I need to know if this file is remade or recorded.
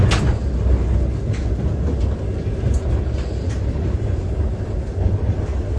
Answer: recorded